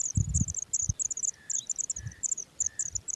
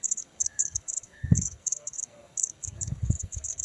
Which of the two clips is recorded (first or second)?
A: first